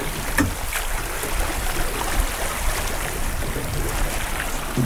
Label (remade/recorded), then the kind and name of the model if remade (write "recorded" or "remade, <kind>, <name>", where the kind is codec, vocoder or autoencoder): recorded